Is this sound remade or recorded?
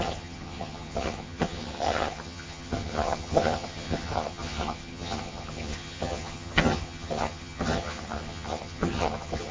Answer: remade